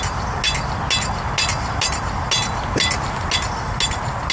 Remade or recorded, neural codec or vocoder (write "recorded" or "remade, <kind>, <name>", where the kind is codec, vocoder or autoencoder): recorded